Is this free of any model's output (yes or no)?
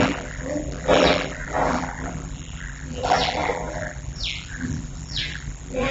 no